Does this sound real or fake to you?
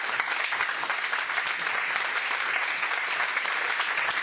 real